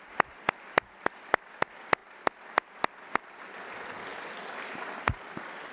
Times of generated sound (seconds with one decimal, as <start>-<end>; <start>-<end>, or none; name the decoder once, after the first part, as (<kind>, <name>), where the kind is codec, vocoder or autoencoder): 4.1-4.7 (vocoder, BigVGAN v2)